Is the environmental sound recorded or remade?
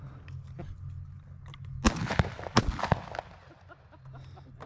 recorded